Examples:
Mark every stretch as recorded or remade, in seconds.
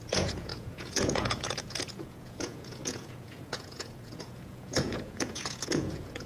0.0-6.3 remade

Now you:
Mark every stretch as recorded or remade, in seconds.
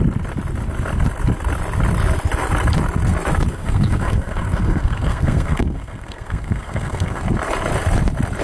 0.0-3.5 recorded; 3.5-7.2 remade; 7.2-8.4 recorded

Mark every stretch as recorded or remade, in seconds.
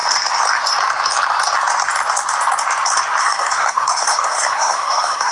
0.0-3.2 recorded; 3.2-5.3 remade